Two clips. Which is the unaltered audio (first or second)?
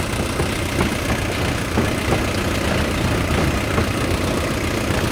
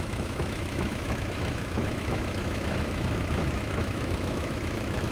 first